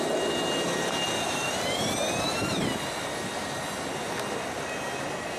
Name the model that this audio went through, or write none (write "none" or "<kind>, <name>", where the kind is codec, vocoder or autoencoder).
none